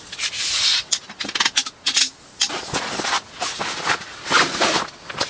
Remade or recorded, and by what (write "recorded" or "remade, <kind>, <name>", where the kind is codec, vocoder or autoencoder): recorded